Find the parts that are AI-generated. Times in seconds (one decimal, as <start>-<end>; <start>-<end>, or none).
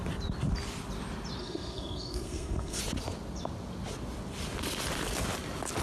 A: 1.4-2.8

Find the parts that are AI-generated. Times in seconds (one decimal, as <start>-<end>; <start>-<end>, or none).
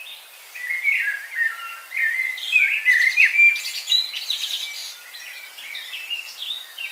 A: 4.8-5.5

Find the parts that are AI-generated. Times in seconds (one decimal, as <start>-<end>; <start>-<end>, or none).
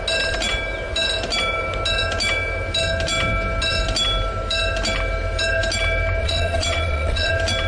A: 6.2-7.3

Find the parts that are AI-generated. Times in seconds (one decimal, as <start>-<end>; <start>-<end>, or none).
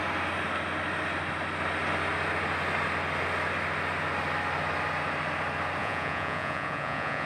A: 5.8-7.3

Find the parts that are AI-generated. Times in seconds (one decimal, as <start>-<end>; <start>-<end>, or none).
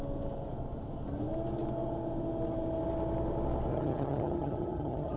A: 3.7-5.2